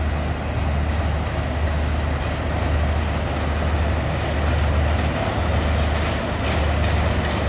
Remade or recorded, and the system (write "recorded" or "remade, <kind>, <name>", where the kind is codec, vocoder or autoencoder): recorded